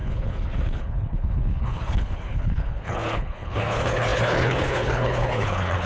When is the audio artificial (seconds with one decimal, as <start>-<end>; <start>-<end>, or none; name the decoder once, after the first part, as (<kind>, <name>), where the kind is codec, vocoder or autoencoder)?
0.0-5.9 (codec, HILCodec)